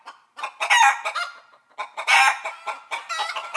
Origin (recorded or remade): recorded